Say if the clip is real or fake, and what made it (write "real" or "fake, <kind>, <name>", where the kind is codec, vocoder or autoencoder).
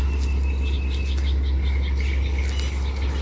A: real